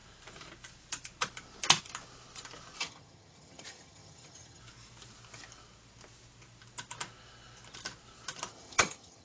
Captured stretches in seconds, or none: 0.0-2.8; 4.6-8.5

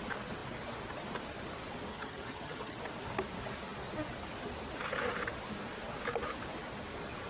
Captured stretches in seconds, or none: 0.0-1.9; 2.8-7.3